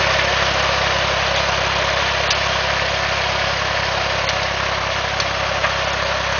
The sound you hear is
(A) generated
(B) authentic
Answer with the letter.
B